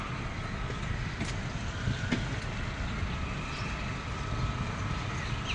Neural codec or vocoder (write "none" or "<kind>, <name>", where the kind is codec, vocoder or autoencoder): none